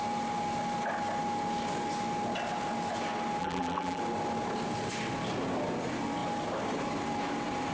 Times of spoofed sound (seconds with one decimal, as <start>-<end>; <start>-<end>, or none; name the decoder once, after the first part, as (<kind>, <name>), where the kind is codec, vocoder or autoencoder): 3.4-4.0 (vocoder, BigVGAN v2)